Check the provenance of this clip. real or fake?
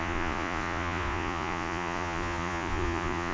fake